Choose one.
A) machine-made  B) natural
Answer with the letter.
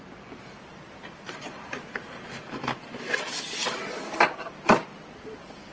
B